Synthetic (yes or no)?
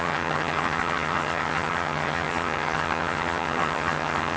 yes